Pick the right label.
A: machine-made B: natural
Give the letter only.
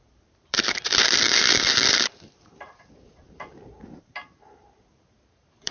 A